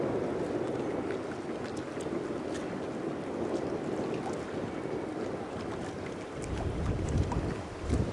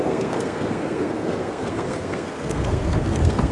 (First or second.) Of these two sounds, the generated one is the second